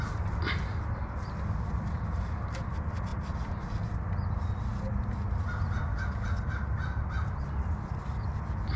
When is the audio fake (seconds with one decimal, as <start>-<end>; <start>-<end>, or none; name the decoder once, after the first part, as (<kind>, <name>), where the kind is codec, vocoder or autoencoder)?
none